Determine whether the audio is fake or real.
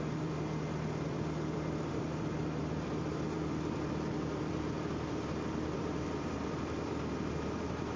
fake